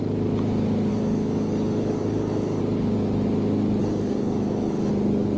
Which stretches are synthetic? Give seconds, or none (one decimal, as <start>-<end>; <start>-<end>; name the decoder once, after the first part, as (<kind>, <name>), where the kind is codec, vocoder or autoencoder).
0.9-2.6 (codec, DAC); 3.8-4.9